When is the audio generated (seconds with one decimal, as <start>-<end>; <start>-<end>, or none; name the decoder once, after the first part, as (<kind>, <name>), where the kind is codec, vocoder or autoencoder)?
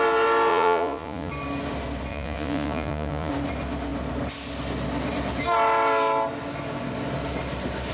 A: 0.5-1.3 (vocoder, Vocos); 2.1-3.3